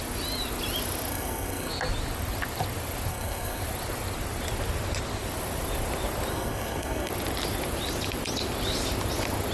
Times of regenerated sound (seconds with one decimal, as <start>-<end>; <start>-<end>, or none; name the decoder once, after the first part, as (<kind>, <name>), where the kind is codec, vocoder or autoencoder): 1.1-1.7 (codec, SNAC); 3.1-3.6; 6.3-7.1